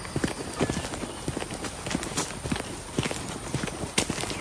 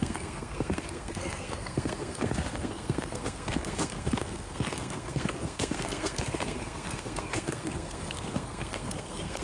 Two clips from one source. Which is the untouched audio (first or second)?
first